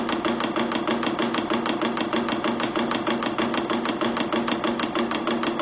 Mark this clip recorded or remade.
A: recorded